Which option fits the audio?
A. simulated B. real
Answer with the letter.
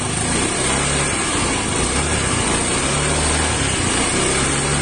B